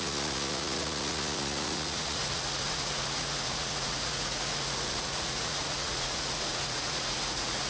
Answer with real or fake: fake